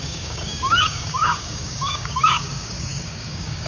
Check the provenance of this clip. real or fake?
fake